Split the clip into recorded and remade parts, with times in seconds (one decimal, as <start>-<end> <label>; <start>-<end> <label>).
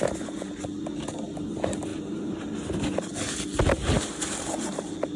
0.0-5.2 recorded